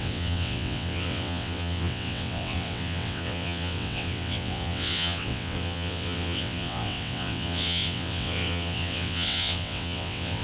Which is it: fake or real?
fake